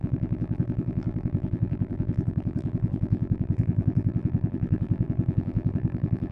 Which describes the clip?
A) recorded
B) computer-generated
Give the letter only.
B